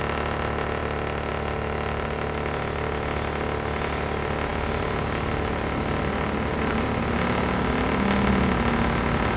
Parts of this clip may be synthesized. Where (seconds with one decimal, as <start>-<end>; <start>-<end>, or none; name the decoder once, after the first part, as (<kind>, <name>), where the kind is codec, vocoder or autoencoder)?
none